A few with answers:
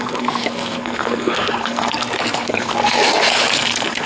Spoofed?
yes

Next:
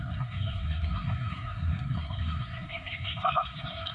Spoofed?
yes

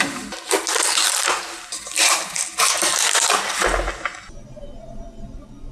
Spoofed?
no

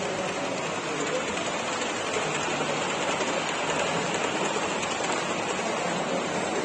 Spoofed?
no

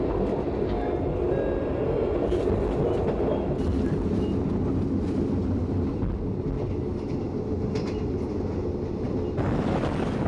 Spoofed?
no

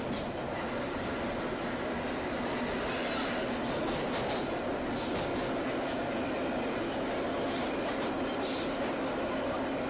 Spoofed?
no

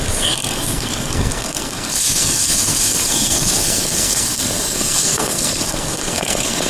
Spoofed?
yes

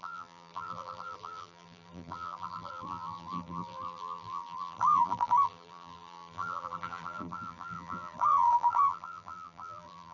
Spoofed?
yes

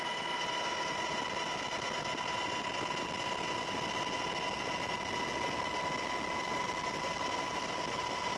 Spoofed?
no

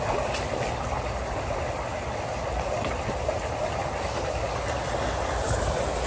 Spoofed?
no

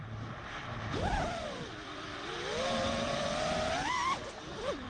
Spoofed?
yes